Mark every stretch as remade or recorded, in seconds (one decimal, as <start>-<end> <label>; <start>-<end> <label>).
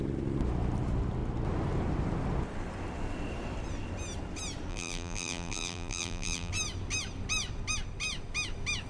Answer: 0.0-4.7 recorded; 4.7-6.5 remade; 6.5-8.9 recorded